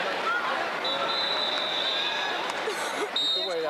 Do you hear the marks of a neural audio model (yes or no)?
no